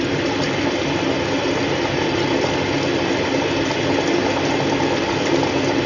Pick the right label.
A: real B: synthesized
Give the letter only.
A